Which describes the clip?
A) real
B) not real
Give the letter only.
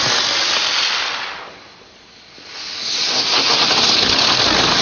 A